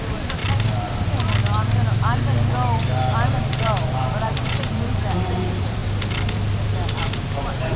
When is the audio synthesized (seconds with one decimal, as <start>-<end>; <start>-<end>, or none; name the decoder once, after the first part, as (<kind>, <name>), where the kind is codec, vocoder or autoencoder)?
0.0-0.4 (vocoder, BigVGAN v2); 3.3-5.8; 7.0-7.8